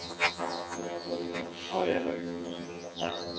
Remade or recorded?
remade